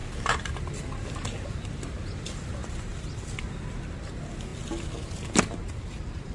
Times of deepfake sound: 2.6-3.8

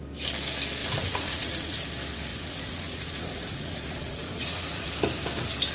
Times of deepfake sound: 0.8-1.8; 2.3-4.9

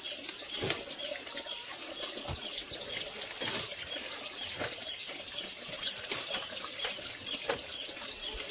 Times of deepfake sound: 5.0-8.5

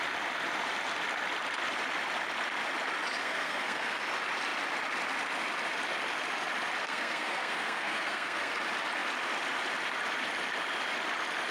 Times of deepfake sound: 3.2-4.0; 6.8-8.5

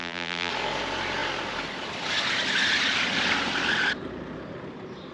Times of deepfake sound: 0.0-0.5

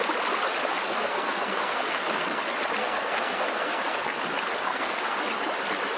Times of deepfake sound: 0.9-2.4; 2.8-4.2; 4.7-5.2

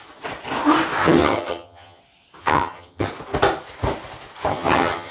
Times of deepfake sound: 1.0-2.0; 2.4-3.1; 4.5-5.1

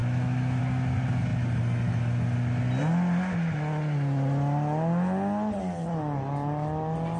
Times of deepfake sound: 0.0-0.6